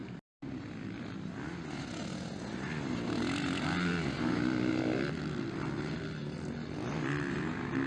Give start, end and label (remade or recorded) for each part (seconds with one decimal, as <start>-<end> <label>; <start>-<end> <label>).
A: 0.0-7.9 recorded